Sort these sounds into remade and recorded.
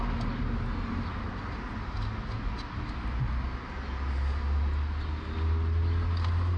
recorded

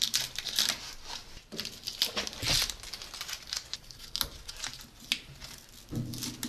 recorded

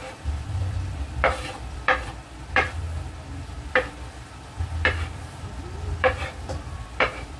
remade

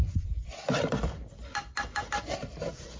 remade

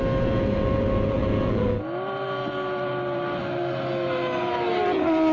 recorded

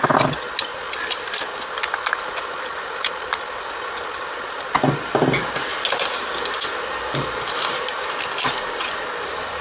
recorded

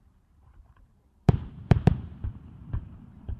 remade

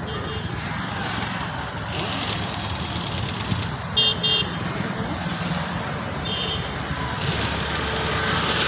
recorded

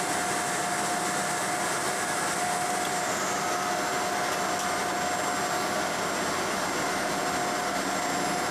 recorded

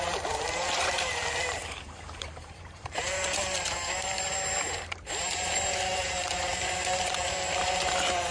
remade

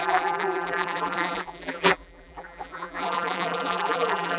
remade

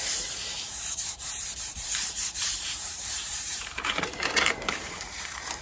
remade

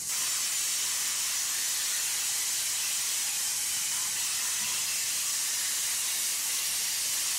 remade